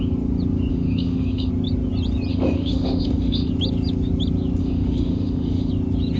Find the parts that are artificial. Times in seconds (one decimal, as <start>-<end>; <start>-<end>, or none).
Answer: 0.7-1.5; 2.3-3.5; 4.6-5.7